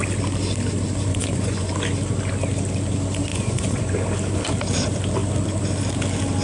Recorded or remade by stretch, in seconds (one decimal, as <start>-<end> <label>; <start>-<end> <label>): 0.0-1.1 recorded; 1.1-1.7 remade; 1.7-3.3 recorded; 3.3-3.9 remade; 3.9-6.4 recorded